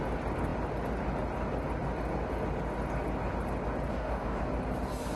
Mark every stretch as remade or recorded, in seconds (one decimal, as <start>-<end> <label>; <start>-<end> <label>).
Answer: 0.0-3.9 recorded; 3.9-4.4 remade; 4.4-5.2 recorded